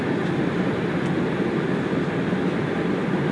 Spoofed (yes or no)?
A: no